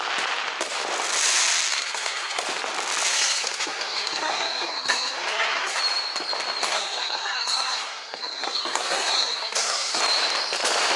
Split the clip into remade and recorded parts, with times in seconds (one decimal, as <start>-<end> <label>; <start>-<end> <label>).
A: 0.0-1.7 recorded; 1.7-2.4 remade; 2.4-3.1 recorded; 3.1-5.8 remade; 5.8-6.6 recorded; 6.6-10.0 remade; 10.0-11.0 recorded